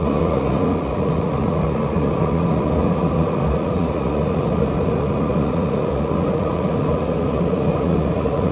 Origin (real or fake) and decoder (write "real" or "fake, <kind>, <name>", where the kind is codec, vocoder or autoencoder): fake, vocoder, Vocos